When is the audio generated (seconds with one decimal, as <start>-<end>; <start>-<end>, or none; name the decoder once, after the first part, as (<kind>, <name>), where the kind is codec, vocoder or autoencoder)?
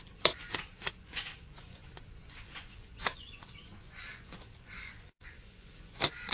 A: 0.0-6.3 (vocoder, Vocos)